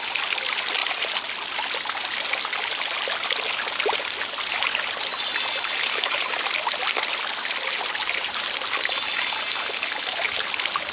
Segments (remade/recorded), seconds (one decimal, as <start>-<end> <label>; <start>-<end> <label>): 0.0-0.8 recorded; 0.8-2.1 remade; 2.1-5.1 recorded; 5.1-8.0 remade; 8.0-10.9 recorded